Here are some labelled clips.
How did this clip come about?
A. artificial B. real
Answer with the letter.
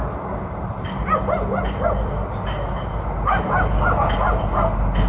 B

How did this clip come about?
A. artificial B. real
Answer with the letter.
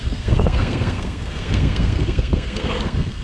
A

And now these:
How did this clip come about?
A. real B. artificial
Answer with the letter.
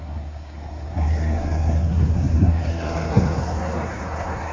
B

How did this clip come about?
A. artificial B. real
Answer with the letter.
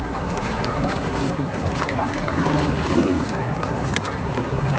A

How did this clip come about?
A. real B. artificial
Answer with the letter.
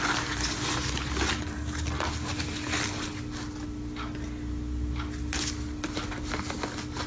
A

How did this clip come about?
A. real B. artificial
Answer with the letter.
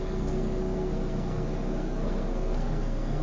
B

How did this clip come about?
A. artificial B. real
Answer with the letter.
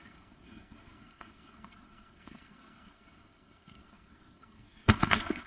A